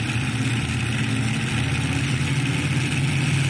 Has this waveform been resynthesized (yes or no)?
no